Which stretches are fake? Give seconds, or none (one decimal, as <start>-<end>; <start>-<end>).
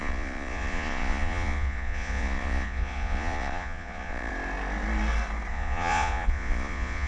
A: 0.0-4.3; 5.5-7.1